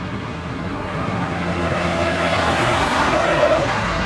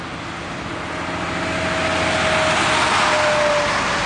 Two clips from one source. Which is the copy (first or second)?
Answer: first